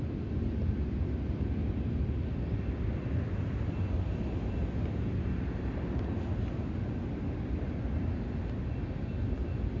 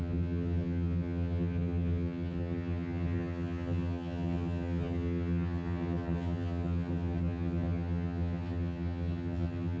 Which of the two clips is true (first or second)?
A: first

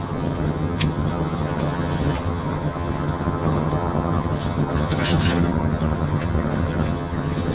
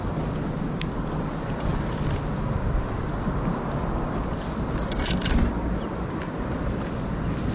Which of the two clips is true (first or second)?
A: second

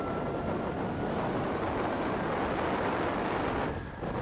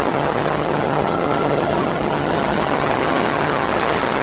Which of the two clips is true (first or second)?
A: first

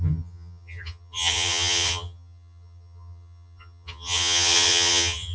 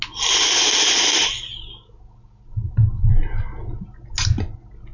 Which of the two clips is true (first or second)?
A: second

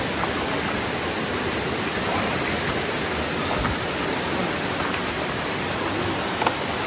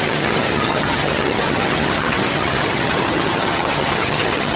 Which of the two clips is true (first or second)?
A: first